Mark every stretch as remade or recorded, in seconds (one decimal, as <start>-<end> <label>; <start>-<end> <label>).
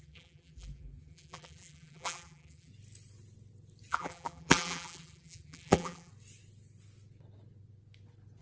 0.0-2.7 remade; 2.7-3.9 recorded; 3.9-6.1 remade; 6.1-8.4 recorded